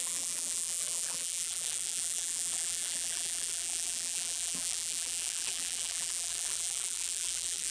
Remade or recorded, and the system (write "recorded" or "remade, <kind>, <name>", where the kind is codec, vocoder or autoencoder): remade, vocoder, BigVGAN v2